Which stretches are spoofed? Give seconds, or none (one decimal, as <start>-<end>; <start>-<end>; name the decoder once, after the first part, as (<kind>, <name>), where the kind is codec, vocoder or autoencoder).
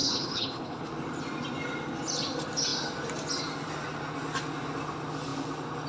0.0-0.9 (codec, HILCodec)